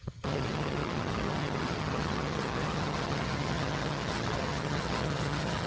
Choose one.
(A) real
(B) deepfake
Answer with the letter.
B